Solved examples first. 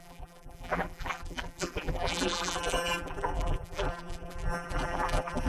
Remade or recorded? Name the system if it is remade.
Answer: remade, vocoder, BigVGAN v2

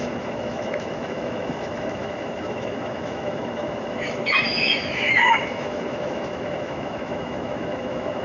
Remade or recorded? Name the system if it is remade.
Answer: remade, autoencoder, DAC-VAE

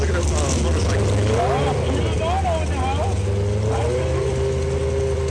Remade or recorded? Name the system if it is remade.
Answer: recorded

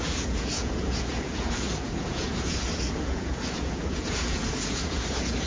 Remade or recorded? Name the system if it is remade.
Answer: remade, vocoder, Vocos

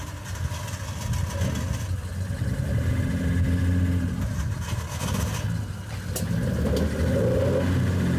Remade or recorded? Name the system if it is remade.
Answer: recorded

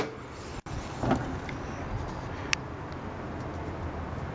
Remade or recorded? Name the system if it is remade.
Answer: recorded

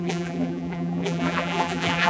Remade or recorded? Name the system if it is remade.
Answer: remade, vocoder, BigVGAN v2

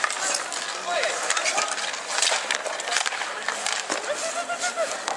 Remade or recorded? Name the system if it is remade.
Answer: recorded